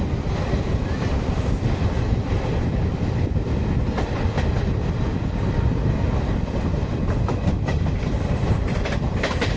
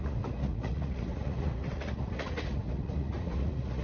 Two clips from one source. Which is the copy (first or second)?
second